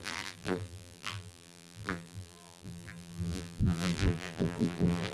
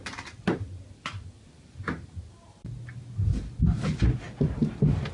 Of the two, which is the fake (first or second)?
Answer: first